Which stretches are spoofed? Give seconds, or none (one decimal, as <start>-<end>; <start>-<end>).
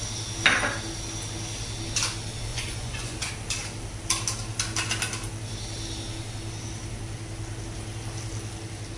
2.5-3.3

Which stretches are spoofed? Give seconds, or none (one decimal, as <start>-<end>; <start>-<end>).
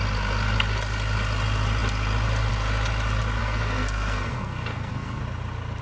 3.4-5.2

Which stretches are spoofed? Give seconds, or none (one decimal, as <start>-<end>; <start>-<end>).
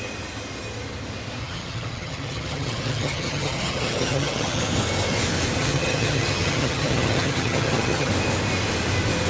1.4-4.6; 5.6-8.1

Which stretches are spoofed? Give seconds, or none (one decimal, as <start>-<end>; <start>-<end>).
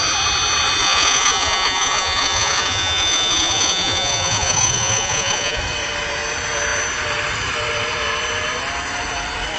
0.8-5.6